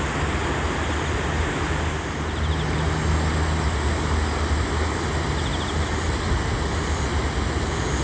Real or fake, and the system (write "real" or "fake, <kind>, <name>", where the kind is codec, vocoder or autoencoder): real